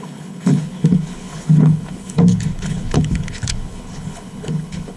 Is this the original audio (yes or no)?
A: no